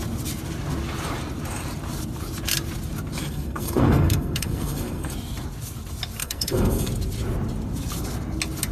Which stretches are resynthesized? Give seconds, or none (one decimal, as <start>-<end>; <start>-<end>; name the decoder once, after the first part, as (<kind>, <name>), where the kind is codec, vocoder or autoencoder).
3.2-5.1 (codec, SNAC); 6.2-6.9